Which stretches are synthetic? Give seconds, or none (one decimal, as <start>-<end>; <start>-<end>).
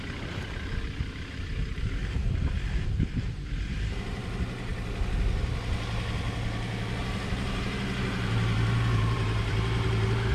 0.0-4.7; 7.0-10.3